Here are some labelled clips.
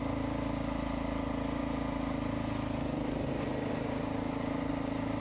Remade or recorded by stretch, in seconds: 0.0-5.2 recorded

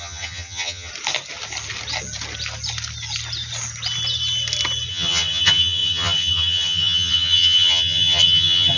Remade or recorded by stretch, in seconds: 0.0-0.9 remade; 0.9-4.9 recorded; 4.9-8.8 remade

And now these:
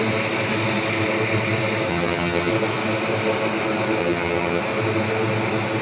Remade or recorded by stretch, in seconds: 0.0-1.9 recorded; 1.9-2.5 remade; 2.5-4.0 recorded; 4.0-4.6 remade; 4.6-5.8 recorded

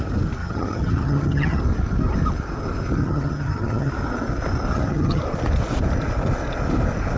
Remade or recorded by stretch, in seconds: 0.0-0.4 recorded; 0.4-1.6 remade; 1.6-3.0 recorded; 3.0-3.9 remade; 3.9-4.7 recorded; 4.7-5.2 remade; 5.2-7.2 recorded

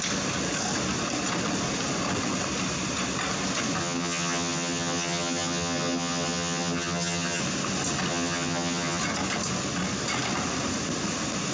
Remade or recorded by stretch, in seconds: 0.0-3.8 recorded; 3.8-7.4 remade; 7.4-8.1 recorded; 8.1-9.0 remade; 9.0-11.5 recorded